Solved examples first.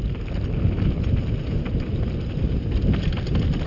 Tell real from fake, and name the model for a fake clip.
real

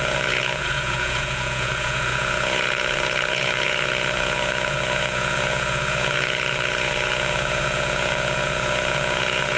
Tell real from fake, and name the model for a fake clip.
fake, vocoder, Vocos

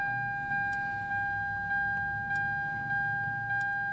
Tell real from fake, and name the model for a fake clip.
real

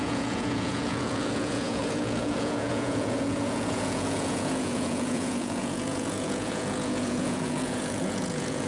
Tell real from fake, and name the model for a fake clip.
fake, vocoder, Vocos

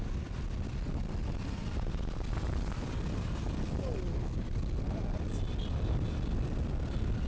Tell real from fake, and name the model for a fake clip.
real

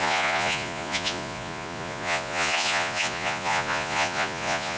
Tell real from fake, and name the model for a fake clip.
fake, vocoder, Vocos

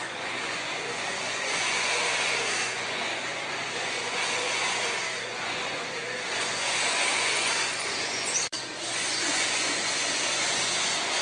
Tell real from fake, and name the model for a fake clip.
fake, vocoder, Vocos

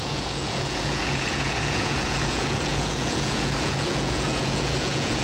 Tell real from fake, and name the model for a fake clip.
fake, vocoder, Vocos